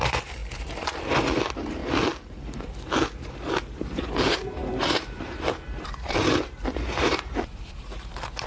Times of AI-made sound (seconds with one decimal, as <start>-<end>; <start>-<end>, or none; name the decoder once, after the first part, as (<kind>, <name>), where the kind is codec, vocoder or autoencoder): 0.0-1.8 (vocoder, BigVGAN v2); 3.6-8.5